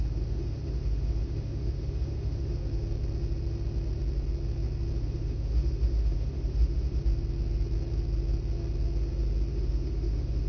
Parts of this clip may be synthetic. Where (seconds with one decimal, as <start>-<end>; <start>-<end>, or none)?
0.0-2.6; 5.0-7.0; 9.5-10.5